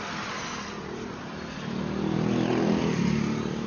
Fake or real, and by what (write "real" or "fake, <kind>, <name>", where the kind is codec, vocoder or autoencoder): real